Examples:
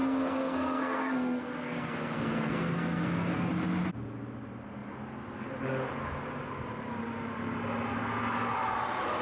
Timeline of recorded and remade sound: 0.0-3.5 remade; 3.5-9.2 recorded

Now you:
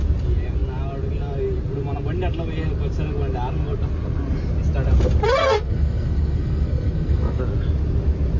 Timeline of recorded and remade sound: 0.0-5.4 recorded; 5.4-7.4 remade; 7.4-8.4 recorded

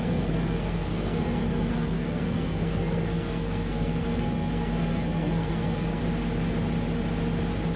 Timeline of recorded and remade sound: 0.0-6.0 remade; 6.0-7.8 recorded

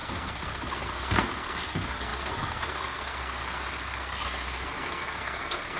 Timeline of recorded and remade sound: 0.0-5.8 remade